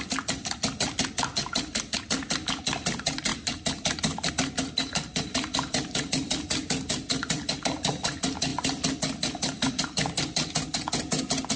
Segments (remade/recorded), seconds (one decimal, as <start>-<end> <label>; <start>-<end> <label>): 0.0-11.6 recorded